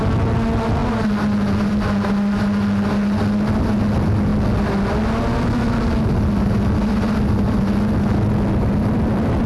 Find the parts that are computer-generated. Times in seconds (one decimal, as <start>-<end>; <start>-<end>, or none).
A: none

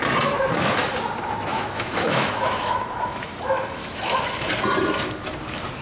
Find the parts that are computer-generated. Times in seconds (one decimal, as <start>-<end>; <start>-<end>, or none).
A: 1.5-4.5

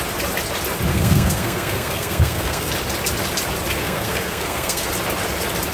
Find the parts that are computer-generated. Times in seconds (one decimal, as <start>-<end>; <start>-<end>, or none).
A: 0.9-2.7; 3.8-4.9

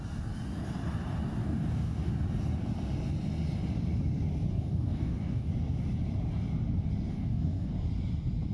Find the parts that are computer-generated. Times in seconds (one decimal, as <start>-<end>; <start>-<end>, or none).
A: 1.4-2.1; 4.5-5.5; 7.1-7.7

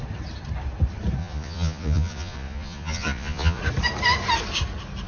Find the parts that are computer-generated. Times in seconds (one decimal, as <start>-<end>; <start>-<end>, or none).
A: 1.2-3.6

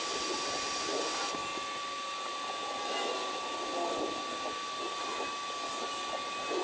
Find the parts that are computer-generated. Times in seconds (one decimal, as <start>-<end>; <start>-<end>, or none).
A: none

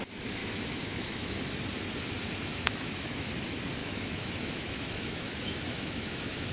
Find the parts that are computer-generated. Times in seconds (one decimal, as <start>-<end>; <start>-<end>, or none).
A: 0.4-1.4; 2.5-3.3; 3.8-6.5

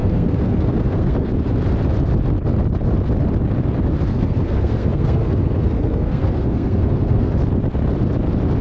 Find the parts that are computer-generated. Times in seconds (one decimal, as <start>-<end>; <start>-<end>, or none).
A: 0.0-1.3; 4.1-7.3